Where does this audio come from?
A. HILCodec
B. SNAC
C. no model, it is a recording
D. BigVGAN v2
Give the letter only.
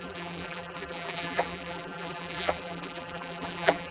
D